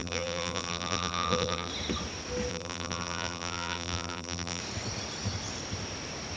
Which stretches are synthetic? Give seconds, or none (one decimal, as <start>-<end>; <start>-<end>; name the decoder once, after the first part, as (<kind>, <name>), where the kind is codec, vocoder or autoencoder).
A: 0.0-1.7 (vocoder, BigVGAN v2); 2.5-4.6